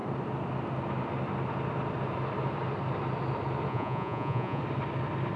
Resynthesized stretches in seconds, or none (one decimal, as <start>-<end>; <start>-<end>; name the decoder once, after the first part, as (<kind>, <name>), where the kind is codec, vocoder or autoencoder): 3.7-4.6 (vocoder, Vocos)